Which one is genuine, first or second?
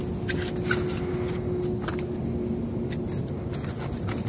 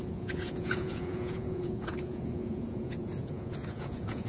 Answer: first